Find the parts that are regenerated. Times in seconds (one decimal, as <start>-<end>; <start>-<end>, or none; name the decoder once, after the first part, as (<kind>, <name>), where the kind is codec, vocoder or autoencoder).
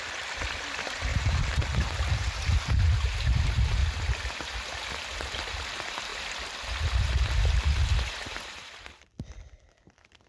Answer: 1.1-3.4 (vocoder, BigVGAN v2)